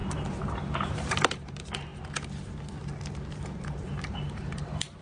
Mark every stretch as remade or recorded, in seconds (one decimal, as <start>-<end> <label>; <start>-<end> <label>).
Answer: 0.0-1.9 remade; 1.9-3.3 recorded; 3.3-5.0 remade